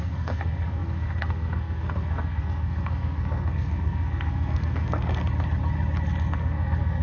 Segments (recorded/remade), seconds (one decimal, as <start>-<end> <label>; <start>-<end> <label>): 0.0-5.2 remade; 5.2-6.3 recorded; 6.3-7.0 remade